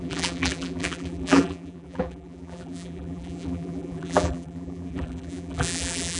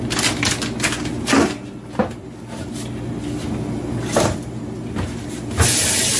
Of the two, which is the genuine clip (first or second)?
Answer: second